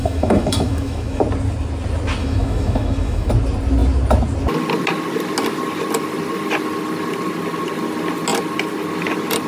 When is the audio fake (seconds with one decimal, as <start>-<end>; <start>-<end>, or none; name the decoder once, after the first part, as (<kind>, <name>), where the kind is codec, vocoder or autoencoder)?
0.0-1.2 (autoencoder, DAC-VAE); 2.2-3.3